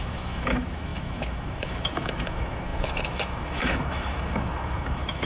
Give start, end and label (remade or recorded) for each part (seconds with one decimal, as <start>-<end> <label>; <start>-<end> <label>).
0.0-5.3 remade